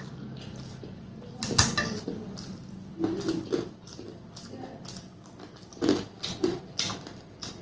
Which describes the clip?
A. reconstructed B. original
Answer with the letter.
B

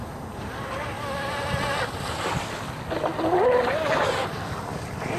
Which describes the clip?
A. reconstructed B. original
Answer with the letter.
B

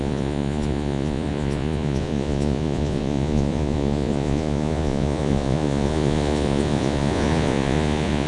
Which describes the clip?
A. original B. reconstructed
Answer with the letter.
B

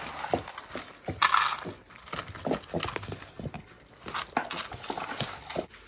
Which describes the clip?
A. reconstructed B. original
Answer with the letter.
B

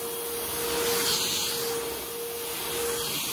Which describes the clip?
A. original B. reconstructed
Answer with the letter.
A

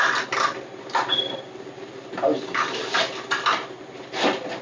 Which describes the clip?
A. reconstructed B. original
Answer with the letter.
A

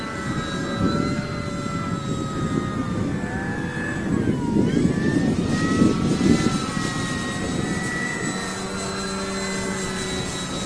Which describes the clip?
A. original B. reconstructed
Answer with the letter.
A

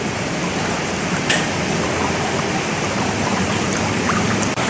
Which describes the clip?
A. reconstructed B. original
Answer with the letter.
B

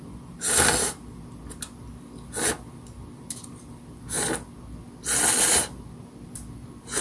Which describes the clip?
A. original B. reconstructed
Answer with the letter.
A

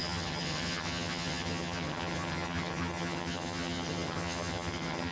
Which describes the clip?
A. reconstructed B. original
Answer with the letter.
A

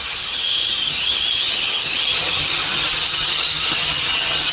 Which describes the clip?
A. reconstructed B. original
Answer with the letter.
A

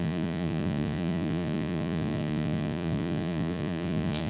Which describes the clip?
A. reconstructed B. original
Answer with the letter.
A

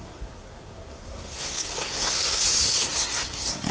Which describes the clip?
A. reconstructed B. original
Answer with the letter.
A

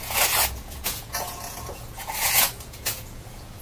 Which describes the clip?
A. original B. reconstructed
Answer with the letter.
B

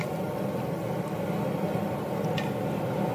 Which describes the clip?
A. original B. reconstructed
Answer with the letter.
A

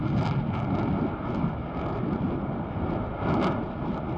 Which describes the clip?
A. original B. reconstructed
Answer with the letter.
A